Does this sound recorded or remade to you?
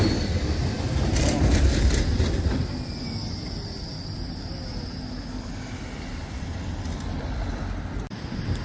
recorded